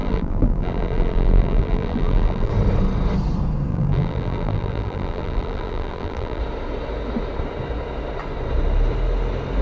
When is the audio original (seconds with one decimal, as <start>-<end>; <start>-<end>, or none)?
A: 2.5-3.7; 6.4-9.6

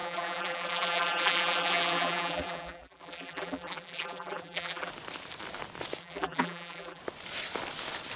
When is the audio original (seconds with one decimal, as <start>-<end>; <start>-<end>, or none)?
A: 4.9-6.0; 7.0-8.2

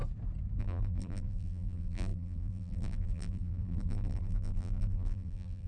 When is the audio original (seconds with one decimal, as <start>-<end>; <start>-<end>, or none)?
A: 0.0-0.6

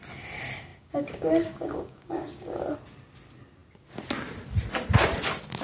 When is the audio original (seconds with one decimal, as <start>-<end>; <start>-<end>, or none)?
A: 0.0-0.7; 2.6-5.6